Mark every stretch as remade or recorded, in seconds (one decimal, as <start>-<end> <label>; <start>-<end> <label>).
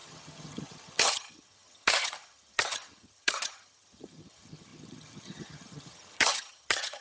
0.0-7.0 remade